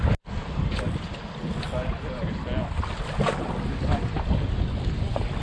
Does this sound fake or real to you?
real